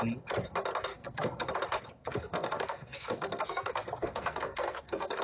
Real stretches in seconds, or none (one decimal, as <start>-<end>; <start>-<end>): 0.0-0.9; 1.5-2.0